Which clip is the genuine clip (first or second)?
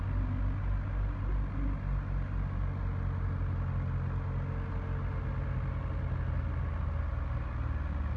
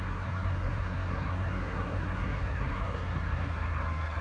first